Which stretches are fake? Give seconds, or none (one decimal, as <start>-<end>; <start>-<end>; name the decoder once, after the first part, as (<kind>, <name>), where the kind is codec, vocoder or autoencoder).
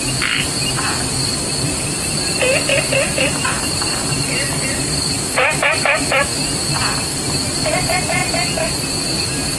none